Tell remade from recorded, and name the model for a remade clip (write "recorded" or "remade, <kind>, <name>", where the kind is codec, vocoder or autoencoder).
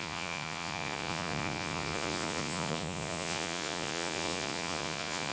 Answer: remade, vocoder, Vocos